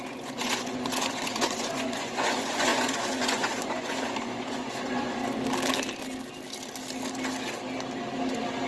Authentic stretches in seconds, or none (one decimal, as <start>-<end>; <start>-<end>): 5.2-8.7